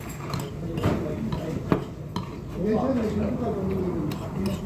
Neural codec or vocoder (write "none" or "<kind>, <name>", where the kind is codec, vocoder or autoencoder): none